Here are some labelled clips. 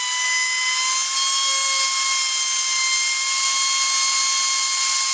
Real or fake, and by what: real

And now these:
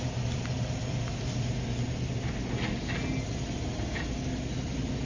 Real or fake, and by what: real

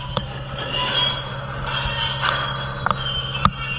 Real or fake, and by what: real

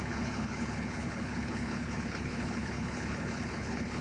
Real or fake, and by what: fake, codec, HILCodec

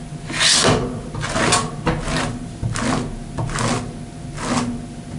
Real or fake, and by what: real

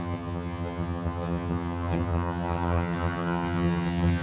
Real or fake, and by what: fake, vocoder, HiFi-GAN